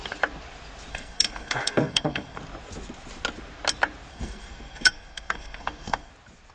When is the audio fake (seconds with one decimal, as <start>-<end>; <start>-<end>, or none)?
0.9-2.4; 4.1-6.1